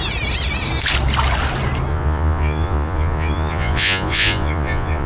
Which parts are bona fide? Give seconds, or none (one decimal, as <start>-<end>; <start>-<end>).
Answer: 0.0-1.9